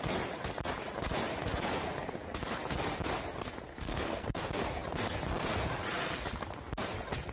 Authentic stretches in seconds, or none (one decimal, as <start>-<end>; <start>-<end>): 0.0-3.7; 4.4-7.3